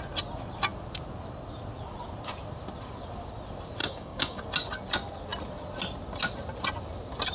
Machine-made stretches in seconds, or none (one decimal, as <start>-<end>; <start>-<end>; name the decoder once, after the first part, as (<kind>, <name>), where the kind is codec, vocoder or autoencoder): 3.8-4.4 (codec, DAC)